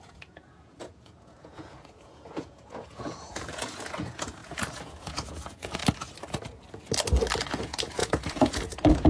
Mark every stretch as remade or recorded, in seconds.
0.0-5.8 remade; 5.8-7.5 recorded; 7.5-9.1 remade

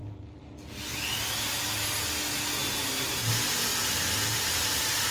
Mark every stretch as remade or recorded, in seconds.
0.0-3.7 recorded; 3.7-5.1 remade

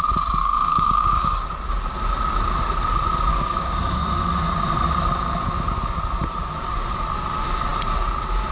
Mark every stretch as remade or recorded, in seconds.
0.0-0.4 recorded; 0.4-1.4 remade; 1.4-3.3 recorded; 3.3-4.2 remade; 4.2-8.5 recorded

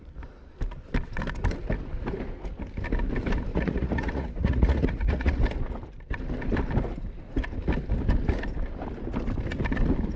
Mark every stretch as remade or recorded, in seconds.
0.0-3.5 recorded; 3.5-5.4 remade; 5.4-10.2 recorded

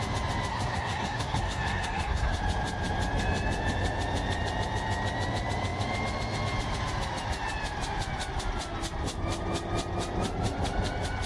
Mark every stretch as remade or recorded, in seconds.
0.0-0.5 recorded; 0.5-2.4 remade; 2.4-11.3 recorded